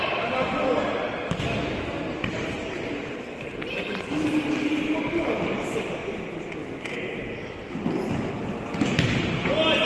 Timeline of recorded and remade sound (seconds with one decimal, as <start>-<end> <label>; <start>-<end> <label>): 0.0-9.9 recorded